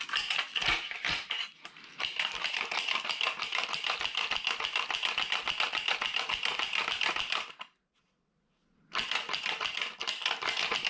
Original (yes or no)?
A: yes